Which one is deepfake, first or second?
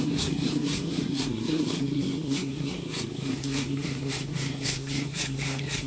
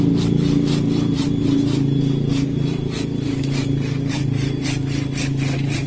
first